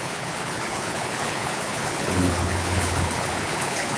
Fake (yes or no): yes